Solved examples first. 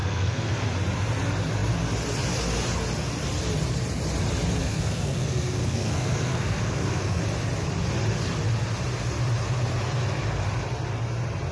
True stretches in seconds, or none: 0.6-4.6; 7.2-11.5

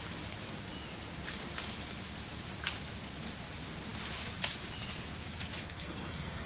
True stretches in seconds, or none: 0.0-5.6